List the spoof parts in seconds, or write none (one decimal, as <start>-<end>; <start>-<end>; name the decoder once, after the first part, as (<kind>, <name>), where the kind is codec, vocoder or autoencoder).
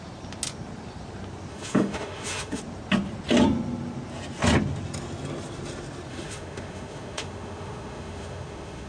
1.5-2.6 (autoencoder, DAC-VAE); 6.1-8.9